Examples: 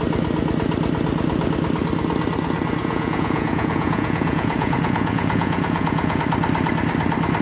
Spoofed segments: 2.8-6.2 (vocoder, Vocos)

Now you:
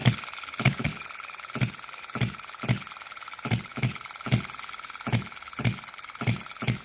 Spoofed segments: none

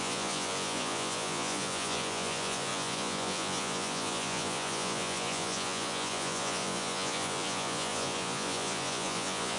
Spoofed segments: 0.0-9.6 (vocoder, Vocos)

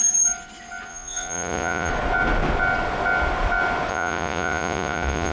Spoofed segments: 0.9-1.9 (vocoder, Vocos); 3.9-5.3

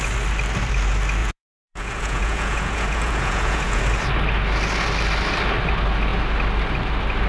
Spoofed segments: 1.2-3.8 (vocoder, Vocos)

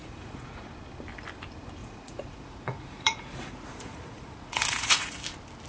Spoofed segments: 0.0-0.7 (vocoder, Vocos); 1.8-5.2

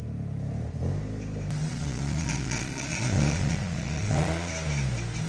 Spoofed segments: 1.6-4.5 (vocoder, Vocos)